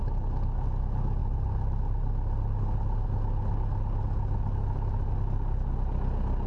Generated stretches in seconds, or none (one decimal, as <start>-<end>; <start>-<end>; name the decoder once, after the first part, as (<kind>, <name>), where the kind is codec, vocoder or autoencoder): none